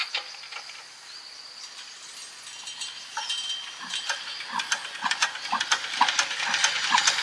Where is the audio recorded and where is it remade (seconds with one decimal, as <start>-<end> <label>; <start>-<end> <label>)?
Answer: 0.0-7.2 recorded